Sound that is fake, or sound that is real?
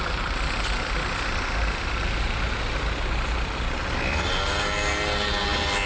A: real